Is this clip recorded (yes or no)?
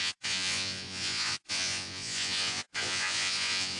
no